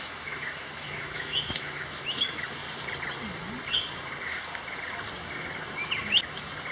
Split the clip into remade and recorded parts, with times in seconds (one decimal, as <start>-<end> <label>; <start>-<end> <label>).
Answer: 0.0-2.6 remade; 2.6-6.7 recorded